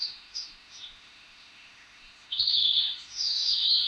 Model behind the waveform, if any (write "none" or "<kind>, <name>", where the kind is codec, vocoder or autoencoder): autoencoder, DAC-VAE